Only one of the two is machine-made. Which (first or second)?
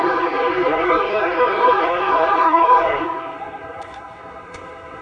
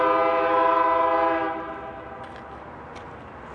first